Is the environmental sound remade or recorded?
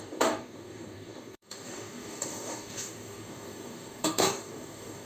remade